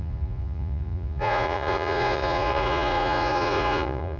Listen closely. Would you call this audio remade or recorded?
remade